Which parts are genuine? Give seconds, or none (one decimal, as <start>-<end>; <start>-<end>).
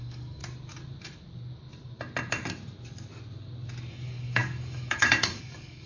0.4-3.9